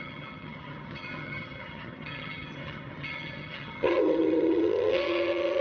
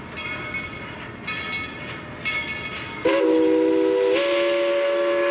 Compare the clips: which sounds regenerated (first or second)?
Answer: first